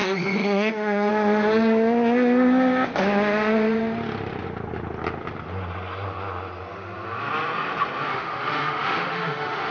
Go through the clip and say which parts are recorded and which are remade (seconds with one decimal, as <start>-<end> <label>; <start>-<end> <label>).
0.0-1.1 remade; 1.1-8.1 recorded; 8.1-9.7 remade